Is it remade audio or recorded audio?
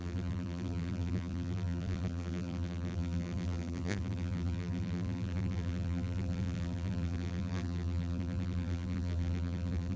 remade